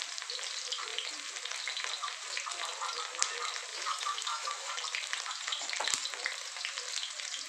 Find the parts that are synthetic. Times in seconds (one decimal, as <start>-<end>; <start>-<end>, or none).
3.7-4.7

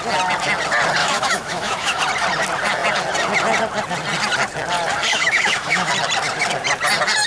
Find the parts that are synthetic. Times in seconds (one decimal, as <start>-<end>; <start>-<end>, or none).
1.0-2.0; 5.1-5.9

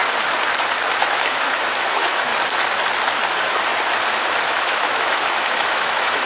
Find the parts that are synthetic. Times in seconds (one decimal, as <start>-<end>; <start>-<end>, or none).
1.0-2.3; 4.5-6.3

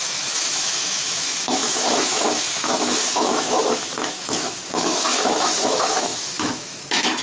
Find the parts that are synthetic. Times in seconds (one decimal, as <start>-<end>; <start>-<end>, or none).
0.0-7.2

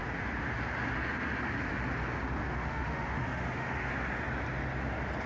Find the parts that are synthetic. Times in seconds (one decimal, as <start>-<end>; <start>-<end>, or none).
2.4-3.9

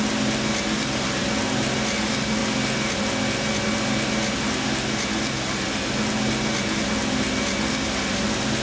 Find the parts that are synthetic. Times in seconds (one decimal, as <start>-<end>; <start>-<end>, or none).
none